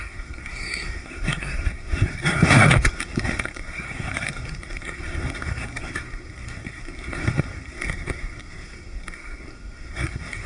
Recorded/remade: remade